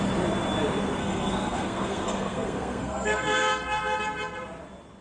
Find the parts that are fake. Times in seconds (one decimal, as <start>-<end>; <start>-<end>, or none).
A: 1.0-4.0

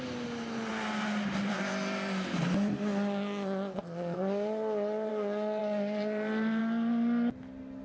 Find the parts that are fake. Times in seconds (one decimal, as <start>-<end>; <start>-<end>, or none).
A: 5.6-6.6

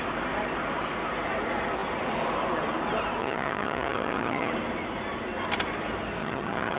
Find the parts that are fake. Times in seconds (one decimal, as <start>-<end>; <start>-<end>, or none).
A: 3.2-4.5; 6.2-6.8

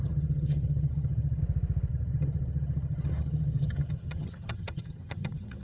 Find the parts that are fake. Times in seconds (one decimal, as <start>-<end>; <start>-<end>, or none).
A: 0.0-1.4; 1.9-5.6

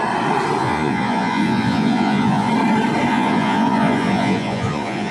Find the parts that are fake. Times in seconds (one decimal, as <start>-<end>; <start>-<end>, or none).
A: 0.6-2.5; 3.1-5.1